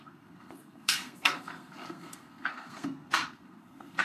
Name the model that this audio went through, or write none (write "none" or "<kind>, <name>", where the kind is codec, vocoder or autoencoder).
codec, SNAC